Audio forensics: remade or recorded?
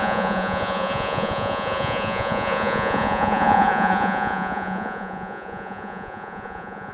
remade